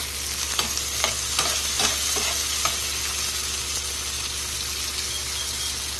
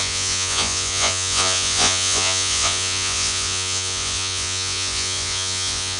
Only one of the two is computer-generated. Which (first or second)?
second